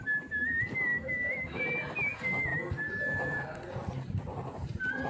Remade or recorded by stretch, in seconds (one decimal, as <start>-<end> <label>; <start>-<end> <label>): 0.0-0.9 recorded; 0.9-1.6 remade; 1.6-5.1 recorded